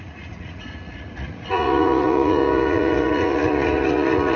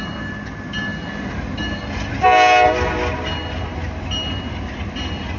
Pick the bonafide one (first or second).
second